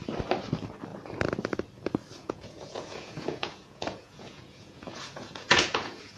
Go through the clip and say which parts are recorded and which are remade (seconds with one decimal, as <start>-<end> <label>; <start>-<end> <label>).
0.0-2.2 recorded; 2.2-6.2 remade